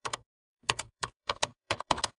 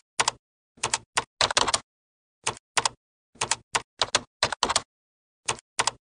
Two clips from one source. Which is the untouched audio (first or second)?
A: second